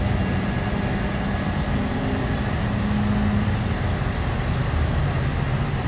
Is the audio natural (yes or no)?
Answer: yes